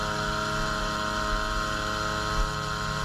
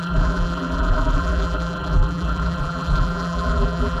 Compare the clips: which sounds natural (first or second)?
first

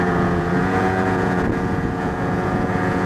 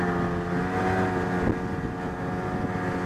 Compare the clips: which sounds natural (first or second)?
second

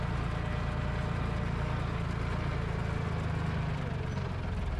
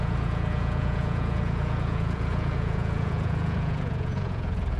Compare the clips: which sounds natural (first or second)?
first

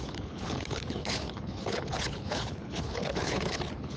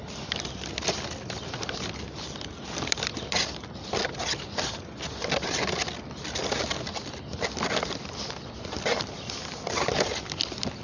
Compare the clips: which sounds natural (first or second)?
second